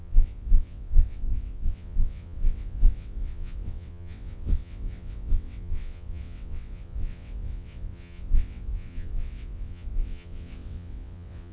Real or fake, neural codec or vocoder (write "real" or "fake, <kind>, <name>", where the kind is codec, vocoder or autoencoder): fake, vocoder, WaveNeXt